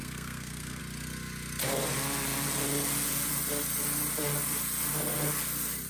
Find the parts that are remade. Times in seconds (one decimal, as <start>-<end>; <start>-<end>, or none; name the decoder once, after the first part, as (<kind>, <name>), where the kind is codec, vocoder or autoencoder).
0.0-0.8 (codec, SNAC)